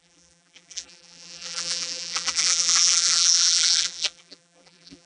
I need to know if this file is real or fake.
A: fake